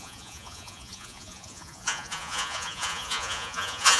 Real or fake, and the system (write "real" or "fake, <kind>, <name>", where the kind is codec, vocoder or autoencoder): fake, vocoder, Vocos